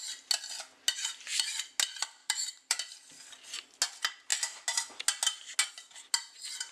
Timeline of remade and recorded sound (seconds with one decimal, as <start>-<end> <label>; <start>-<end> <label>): 0.0-0.9 recorded; 0.9-1.7 remade; 1.7-2.2 recorded; 2.2-2.9 remade; 2.9-6.7 recorded